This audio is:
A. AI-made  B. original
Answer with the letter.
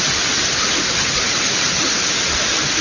B